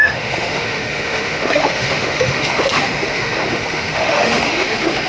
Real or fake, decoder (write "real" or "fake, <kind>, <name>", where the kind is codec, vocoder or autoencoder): fake, autoencoder, DAC-VAE